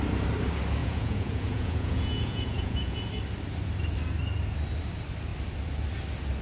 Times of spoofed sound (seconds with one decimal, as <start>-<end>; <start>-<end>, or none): 0.8-3.0